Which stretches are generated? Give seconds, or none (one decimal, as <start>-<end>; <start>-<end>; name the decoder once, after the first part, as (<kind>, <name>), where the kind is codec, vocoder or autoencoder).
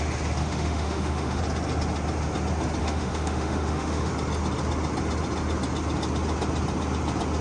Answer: 0.4-1.4 (autoencoder, DAC-VAE); 2.8-4.1